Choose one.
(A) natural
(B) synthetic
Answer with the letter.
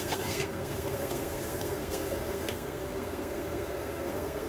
B